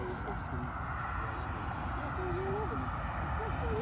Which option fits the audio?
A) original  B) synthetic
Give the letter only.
A